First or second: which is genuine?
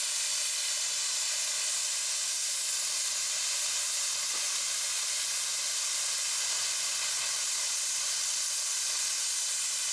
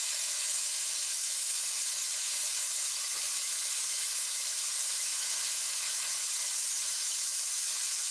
first